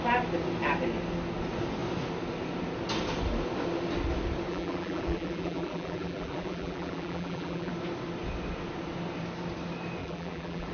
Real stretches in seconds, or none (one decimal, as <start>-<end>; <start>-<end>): 0.0-4.5; 7.7-10.0